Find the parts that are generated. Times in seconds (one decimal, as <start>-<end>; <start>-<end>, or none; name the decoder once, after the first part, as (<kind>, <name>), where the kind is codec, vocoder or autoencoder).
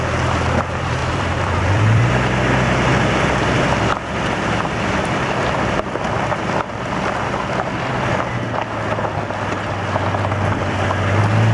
1.0-2.1 (vocoder, BigVGAN v2)